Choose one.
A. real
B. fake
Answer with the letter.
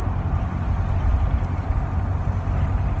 A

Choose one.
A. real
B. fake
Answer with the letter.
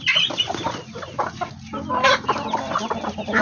A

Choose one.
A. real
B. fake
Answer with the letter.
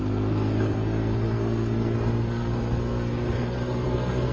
B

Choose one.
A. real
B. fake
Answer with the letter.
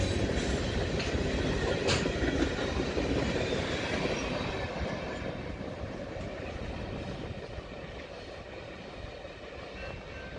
A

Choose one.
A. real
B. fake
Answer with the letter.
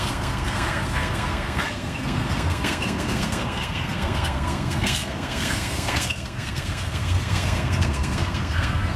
B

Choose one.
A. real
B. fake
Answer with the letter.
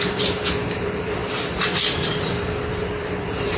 B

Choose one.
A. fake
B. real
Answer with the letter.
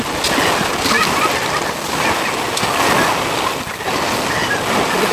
B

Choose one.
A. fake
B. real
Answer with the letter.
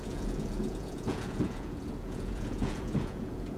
A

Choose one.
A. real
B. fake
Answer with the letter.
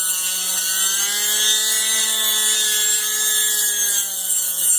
A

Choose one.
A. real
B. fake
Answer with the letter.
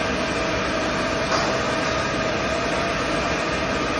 A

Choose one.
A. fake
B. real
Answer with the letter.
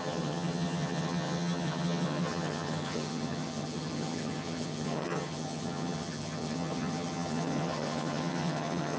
A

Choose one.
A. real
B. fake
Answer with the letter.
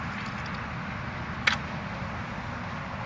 A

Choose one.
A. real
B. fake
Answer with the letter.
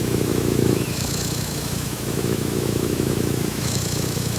B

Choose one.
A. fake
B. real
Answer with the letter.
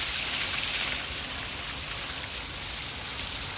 B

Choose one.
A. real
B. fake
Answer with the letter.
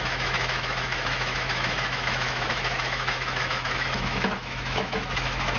B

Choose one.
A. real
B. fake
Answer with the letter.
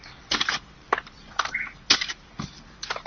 B